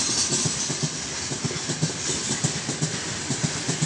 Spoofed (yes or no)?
no